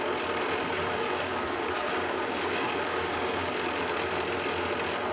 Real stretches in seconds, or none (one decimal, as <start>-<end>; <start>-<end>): 0.0-0.6; 3.5-5.1